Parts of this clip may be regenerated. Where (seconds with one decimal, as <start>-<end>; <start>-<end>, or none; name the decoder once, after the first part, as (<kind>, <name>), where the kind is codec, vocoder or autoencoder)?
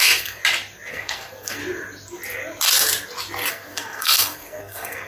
0.0-0.4 (codec, SNAC); 0.9-1.6; 3.5-5.1